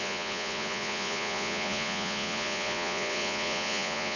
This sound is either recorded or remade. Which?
remade